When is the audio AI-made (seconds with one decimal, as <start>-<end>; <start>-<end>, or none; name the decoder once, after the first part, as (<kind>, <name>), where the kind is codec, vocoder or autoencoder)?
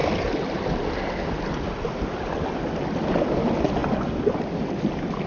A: none